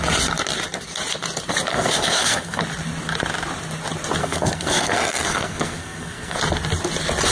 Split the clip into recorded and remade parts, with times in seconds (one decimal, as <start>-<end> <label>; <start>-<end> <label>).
0.0-1.7 recorded; 1.7-2.6 remade; 2.6-4.2 recorded; 4.2-6.4 remade; 6.4-7.3 recorded